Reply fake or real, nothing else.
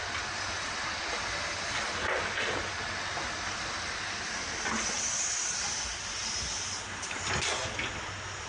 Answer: real